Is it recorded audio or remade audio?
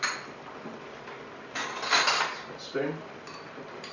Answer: recorded